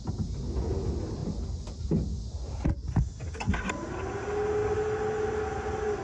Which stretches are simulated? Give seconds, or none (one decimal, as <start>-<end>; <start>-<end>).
none